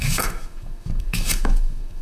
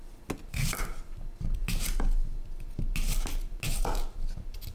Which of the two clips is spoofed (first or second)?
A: first